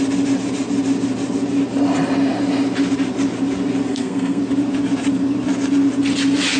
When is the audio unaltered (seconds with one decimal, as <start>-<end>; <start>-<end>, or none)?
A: 0.0-3.9; 4.4-6.6